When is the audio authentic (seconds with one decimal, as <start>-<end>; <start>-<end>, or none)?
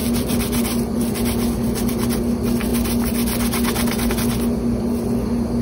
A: 1.9-5.6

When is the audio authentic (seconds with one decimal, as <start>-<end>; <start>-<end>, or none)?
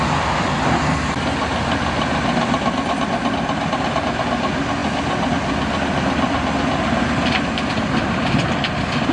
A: 0.0-9.1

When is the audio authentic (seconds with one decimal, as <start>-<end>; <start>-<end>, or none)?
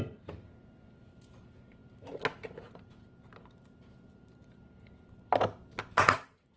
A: 0.0-6.6